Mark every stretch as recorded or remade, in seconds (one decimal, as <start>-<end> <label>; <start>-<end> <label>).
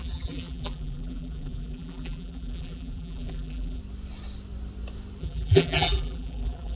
0.0-3.8 remade; 3.8-5.2 recorded; 5.2-6.8 remade